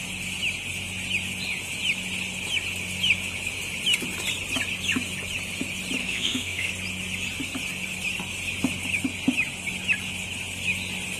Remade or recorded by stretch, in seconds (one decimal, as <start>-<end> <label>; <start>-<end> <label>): 0.0-6.0 recorded; 6.0-6.7 remade; 6.7-11.2 recorded

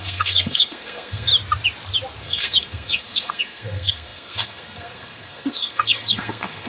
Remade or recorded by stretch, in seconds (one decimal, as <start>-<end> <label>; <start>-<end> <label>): 0.0-1.3 remade; 1.3-2.2 recorded; 2.2-6.7 remade